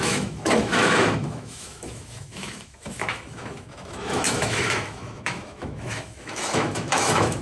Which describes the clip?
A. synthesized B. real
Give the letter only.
A